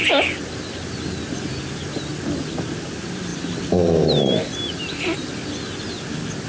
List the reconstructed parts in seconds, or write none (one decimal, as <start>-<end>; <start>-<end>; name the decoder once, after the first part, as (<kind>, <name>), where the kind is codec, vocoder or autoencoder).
none